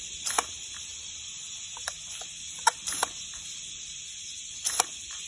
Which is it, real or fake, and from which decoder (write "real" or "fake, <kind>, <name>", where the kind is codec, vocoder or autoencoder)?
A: fake, vocoder, BigVGAN v2